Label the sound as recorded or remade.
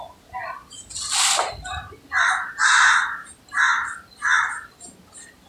recorded